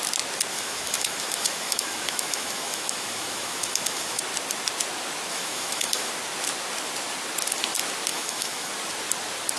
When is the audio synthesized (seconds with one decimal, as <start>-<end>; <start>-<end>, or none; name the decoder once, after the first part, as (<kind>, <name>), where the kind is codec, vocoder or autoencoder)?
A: 0.5-4.2 (autoencoder, DAC-VAE); 5.3-6.1; 8.1-8.7